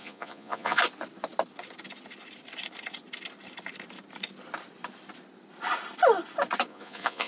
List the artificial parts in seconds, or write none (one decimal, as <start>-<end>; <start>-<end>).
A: 0.0-0.8; 6.7-7.3